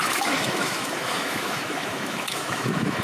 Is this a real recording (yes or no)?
no